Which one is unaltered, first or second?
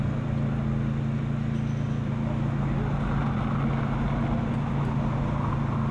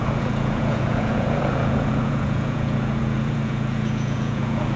first